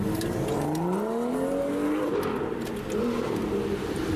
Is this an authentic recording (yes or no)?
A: yes